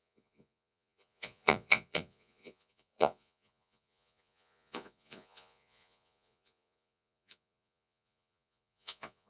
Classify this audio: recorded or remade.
remade